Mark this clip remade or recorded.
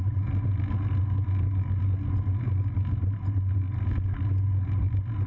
recorded